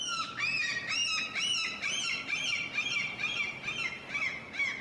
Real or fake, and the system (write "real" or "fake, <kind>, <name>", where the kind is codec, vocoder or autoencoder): real